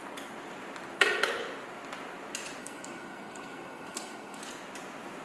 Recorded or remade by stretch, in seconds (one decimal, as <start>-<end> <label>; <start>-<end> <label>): 0.0-2.6 recorded; 2.6-4.4 remade; 4.4-5.2 recorded